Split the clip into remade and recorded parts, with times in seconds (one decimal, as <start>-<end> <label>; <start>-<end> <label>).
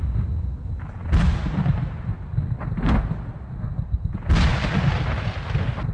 0.0-5.9 recorded